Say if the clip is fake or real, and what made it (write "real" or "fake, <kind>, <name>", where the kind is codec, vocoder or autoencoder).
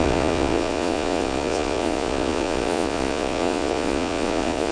fake, vocoder, Vocos